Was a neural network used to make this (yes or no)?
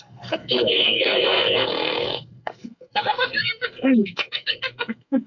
yes